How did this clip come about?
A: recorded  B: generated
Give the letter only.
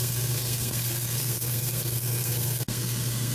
B